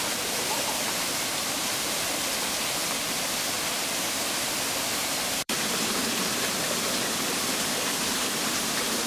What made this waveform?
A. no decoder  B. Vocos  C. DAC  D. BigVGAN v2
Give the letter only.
D